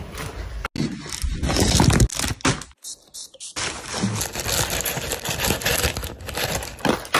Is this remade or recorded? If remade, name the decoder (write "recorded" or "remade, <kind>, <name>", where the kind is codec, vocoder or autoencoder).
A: recorded